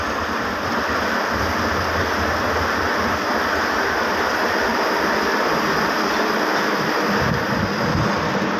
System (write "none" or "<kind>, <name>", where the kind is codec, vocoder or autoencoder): none